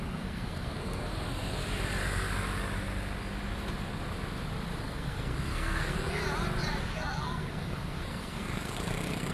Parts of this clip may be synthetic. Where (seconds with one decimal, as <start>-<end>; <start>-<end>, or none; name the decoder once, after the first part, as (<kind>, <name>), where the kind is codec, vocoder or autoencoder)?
0.0-1.1 (codec, SNAC); 4.8-6.2; 6.8-9.3